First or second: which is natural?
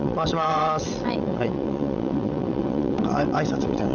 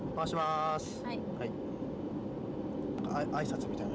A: second